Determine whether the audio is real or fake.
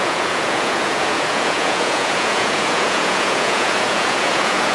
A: fake